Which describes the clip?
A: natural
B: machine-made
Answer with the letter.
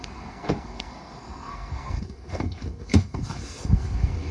B